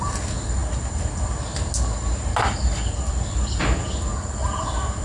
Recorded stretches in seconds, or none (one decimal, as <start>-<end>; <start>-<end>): 0.0-5.0